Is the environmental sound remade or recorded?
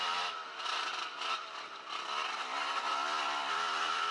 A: recorded